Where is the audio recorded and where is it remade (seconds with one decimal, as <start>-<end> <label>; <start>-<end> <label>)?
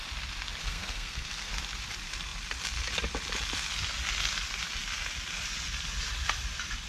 0.0-0.6 recorded; 0.6-1.5 remade; 1.5-6.9 recorded